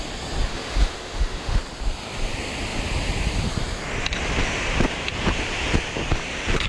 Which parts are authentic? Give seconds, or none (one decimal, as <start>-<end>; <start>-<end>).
0.0-0.5; 1.6-6.7